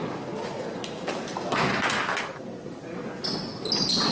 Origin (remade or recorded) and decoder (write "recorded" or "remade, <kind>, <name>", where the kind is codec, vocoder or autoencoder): recorded